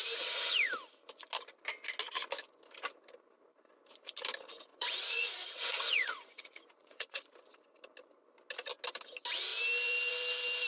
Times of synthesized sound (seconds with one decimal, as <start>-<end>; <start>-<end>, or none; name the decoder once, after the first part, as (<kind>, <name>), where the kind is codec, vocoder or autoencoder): 4.7-7.2 (vocoder, Vocos)